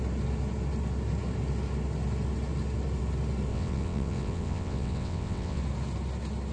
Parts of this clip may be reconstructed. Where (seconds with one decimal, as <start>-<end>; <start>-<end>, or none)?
3.5-5.6